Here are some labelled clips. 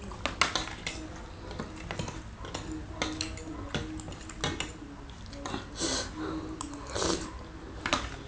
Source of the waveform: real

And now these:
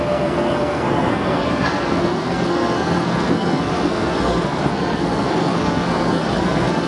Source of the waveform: fake